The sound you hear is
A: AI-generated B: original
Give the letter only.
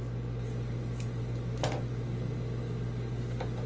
B